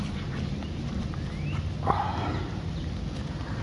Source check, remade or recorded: recorded